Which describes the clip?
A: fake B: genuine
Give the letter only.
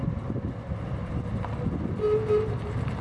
B